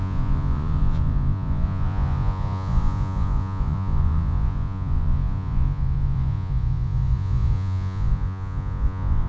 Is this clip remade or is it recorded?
remade